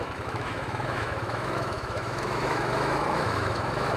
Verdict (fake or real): fake